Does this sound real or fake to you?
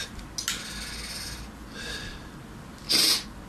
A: real